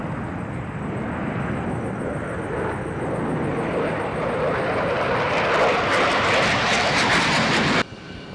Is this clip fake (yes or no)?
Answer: no